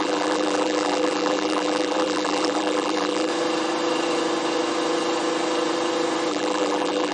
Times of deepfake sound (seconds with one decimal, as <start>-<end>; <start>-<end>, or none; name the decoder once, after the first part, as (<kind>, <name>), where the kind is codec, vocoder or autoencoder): 0.0-3.3 (vocoder, BigVGAN v2); 6.3-7.1